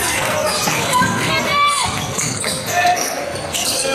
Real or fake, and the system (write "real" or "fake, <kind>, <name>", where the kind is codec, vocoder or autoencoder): fake, codec, SNAC